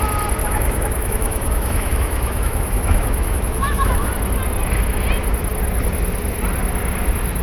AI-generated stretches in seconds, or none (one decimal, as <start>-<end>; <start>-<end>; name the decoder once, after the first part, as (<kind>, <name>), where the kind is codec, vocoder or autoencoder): 0.4-4.1 (autoencoder, DAC-VAE)

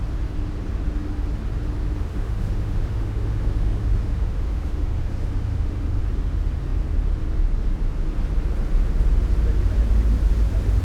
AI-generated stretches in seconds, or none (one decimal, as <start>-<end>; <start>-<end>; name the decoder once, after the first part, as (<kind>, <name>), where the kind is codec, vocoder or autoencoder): 2.1-6.0 (autoencoder, DAC-VAE)

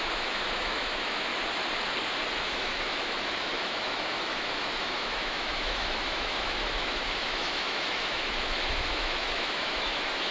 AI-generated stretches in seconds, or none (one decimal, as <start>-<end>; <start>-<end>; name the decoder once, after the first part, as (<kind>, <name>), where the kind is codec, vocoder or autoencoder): 0.0-1.3 (autoencoder, DAC-VAE); 2.4-10.3

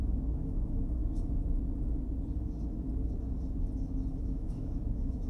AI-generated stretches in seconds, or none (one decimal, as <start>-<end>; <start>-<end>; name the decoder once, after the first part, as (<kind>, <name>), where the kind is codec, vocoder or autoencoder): 0.0-1.0 (autoencoder, DAC-VAE); 4.2-5.3

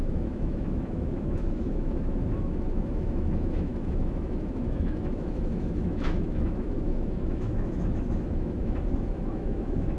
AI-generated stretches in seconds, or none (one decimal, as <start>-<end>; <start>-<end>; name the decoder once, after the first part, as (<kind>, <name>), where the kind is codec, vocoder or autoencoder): 0.0-10.0 (autoencoder, DAC-VAE)